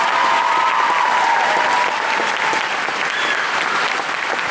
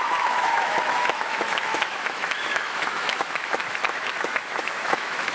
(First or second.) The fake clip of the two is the second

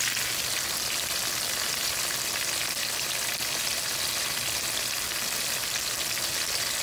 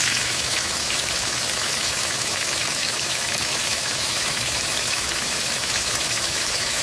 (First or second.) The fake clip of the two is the second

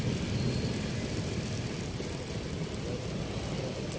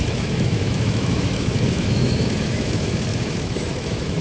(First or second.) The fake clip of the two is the second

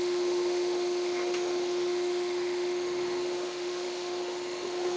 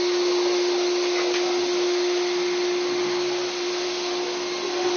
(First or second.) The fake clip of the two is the first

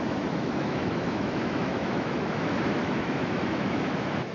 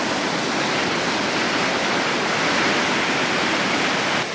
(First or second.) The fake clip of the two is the first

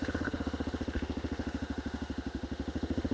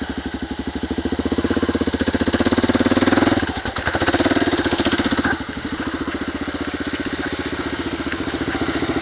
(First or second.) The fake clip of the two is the first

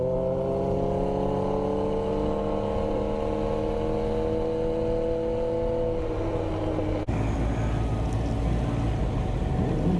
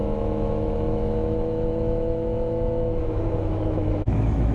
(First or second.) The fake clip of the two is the second